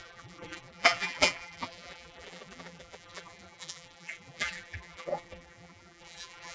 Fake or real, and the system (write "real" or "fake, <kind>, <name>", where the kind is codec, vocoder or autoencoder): fake, vocoder, BigVGAN v2